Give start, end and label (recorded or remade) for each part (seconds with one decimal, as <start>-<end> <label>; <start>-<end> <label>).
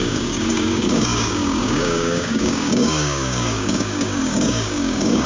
0.0-5.3 remade